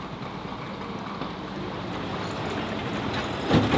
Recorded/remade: recorded